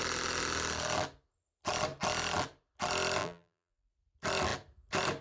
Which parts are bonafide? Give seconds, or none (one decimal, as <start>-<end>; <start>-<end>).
0.0-3.2; 3.9-5.2